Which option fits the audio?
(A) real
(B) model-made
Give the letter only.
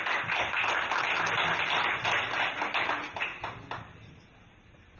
A